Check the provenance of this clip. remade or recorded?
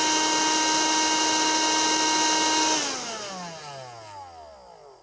recorded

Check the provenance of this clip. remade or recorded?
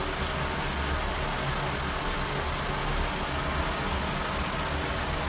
recorded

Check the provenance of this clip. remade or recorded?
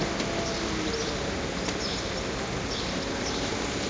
recorded